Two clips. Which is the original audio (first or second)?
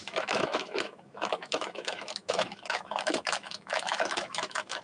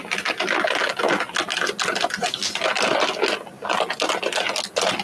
second